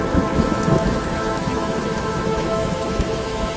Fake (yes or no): yes